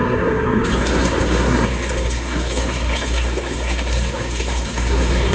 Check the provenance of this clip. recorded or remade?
remade